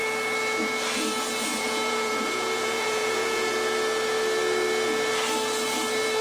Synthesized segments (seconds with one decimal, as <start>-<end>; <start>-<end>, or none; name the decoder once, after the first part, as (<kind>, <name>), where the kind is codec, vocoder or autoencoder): 1.5-3.5 (vocoder, Vocos)